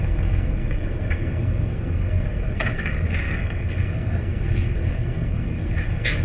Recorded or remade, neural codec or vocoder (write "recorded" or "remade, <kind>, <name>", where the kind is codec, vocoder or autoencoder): remade, codec, SNAC